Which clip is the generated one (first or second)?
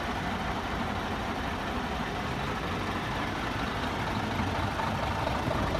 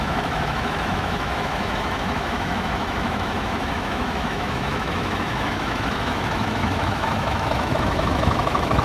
second